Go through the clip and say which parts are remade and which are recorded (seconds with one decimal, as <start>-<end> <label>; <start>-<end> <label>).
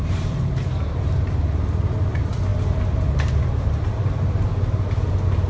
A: 0.0-5.5 recorded